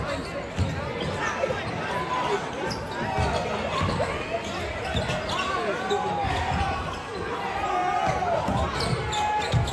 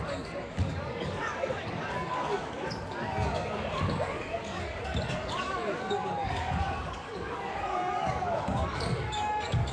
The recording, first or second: first